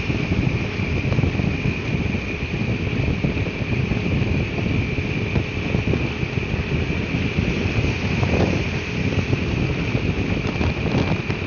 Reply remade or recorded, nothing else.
recorded